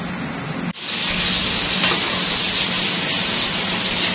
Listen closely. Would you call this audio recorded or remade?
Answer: recorded